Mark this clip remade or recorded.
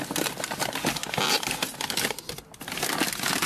recorded